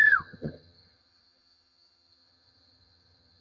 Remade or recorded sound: remade